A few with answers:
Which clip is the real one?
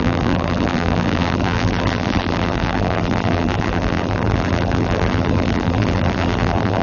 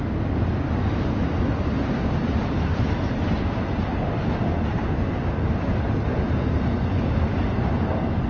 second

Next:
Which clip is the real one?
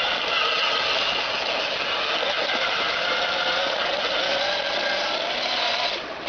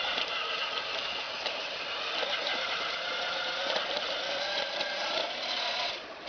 first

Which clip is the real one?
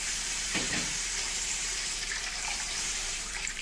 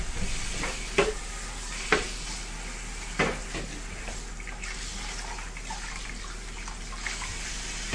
second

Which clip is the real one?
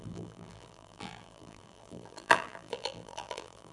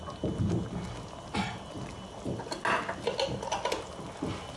second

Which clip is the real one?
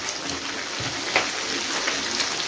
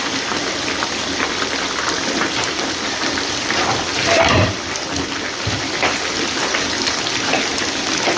first